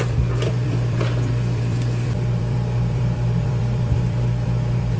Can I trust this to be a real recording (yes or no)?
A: no